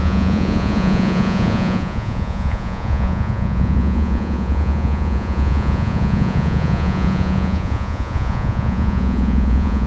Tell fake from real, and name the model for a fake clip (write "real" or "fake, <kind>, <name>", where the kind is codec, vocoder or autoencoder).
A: fake, vocoder, Vocos